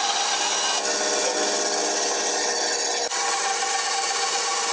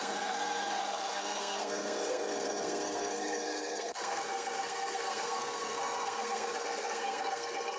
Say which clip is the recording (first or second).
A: first